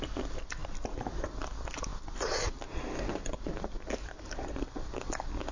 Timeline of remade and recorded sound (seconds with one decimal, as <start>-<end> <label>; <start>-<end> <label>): 0.0-5.5 recorded